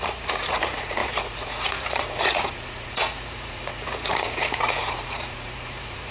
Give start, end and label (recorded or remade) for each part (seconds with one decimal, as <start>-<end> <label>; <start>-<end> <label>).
0.0-6.1 remade

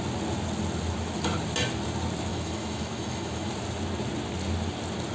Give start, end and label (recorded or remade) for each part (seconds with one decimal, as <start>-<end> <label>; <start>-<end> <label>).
0.0-2.3 recorded; 2.3-3.5 remade; 3.5-5.1 recorded

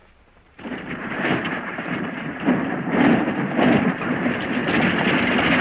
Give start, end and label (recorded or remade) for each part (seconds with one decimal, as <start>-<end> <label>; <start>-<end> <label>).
0.0-2.4 remade; 2.4-5.6 recorded

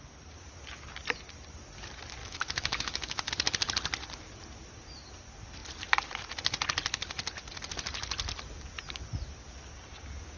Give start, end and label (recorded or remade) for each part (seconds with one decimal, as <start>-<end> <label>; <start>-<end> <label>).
0.0-2.2 recorded; 2.2-3.3 remade; 3.3-10.4 recorded

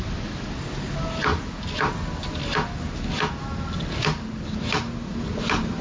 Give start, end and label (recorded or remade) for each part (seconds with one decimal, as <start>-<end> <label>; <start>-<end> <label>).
0.0-5.8 recorded

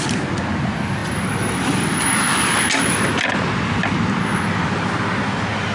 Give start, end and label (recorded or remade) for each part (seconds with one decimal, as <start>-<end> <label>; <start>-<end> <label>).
0.0-5.7 recorded